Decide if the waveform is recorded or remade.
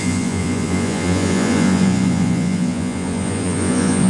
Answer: remade